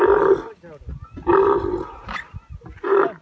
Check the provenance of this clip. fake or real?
real